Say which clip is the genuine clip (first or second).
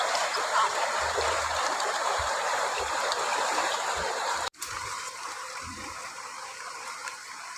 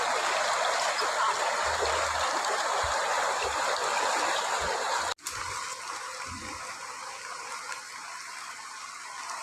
second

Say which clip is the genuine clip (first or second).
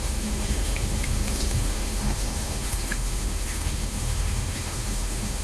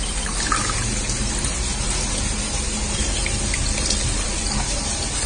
second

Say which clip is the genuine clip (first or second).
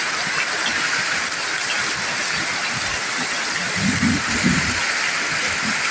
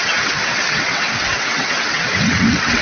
first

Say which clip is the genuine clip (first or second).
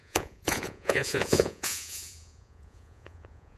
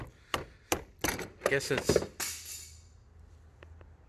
second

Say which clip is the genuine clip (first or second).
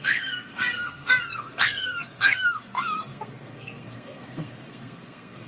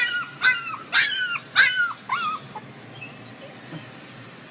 second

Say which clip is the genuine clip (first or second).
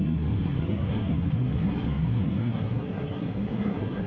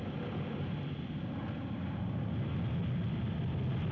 second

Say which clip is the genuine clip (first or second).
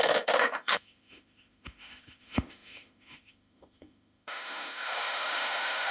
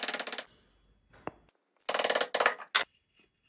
second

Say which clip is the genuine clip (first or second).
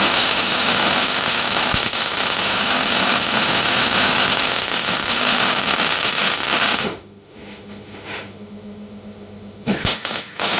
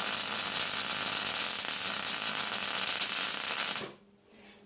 second